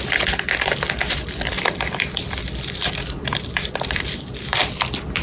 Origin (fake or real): fake